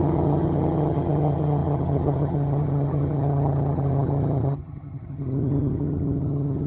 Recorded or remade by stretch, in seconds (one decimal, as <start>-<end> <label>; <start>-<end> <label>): 0.0-6.7 remade